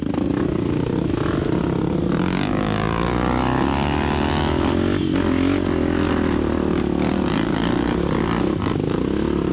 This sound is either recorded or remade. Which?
recorded